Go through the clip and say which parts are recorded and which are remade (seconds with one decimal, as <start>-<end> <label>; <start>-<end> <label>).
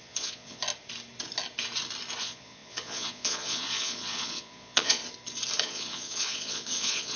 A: 0.0-0.6 remade; 0.6-2.2 recorded; 2.2-5.0 remade; 5.0-5.6 recorded; 5.6-7.2 remade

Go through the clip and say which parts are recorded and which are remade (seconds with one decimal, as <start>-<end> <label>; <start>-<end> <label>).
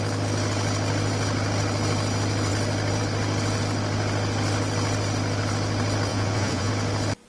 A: 0.0-6.1 recorded; 6.1-6.7 remade; 6.7-7.3 recorded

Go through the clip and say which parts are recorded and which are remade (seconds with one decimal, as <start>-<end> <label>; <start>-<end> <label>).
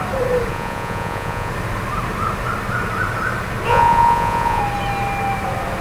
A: 0.0-0.5 recorded; 0.5-1.5 remade; 1.5-3.7 recorded; 3.7-4.6 remade; 4.6-5.8 recorded